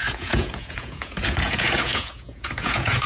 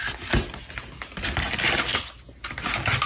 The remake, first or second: first